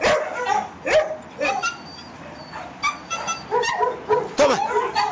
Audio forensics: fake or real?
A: real